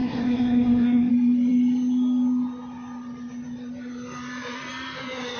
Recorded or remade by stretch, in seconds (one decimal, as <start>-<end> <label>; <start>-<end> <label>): 0.0-1.1 remade; 1.1-5.4 recorded